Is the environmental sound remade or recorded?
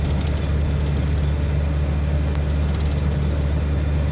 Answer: recorded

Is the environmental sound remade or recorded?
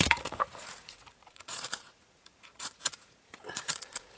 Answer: remade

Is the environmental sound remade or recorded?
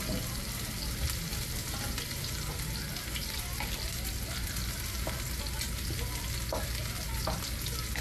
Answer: recorded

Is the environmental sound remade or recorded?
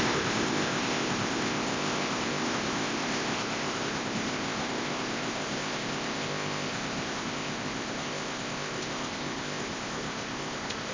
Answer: remade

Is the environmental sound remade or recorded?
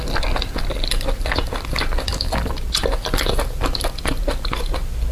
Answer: recorded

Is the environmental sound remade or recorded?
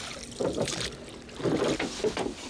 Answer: recorded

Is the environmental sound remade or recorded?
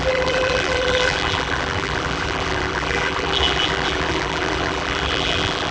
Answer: remade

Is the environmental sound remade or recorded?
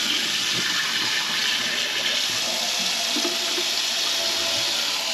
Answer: recorded